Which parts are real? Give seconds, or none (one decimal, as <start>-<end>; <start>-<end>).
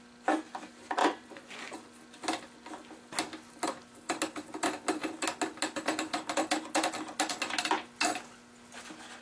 0.0-1.0; 1.8-9.2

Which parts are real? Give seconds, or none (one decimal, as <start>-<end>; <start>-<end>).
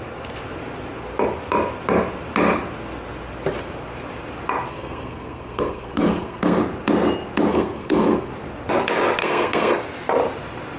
0.0-4.7; 6.6-7.5; 8.3-9.2; 9.8-10.8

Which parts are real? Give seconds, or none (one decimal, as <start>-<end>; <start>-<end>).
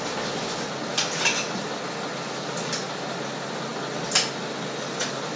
0.0-5.4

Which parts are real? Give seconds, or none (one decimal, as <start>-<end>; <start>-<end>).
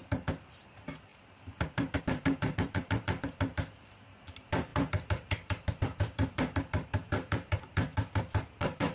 none